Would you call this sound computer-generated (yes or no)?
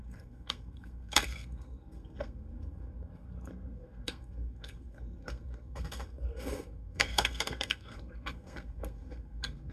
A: yes